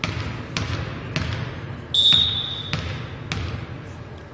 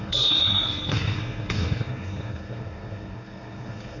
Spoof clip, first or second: second